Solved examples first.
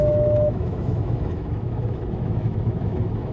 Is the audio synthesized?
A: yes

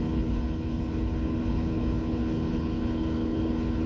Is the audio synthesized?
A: yes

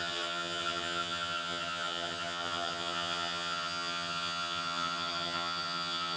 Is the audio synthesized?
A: yes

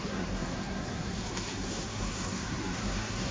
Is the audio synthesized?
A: yes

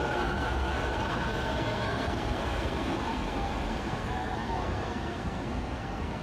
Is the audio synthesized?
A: yes